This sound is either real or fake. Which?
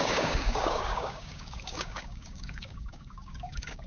fake